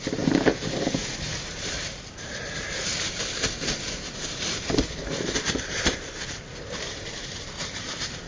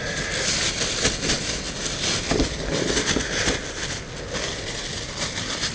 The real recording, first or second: second